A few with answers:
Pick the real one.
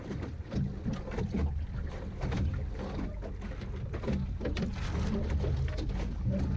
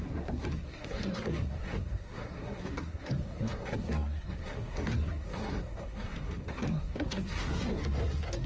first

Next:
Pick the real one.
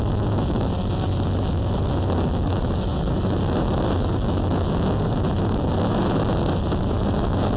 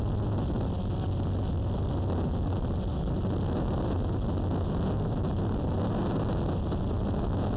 second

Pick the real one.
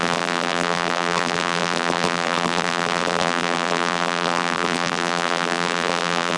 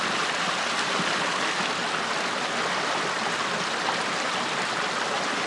second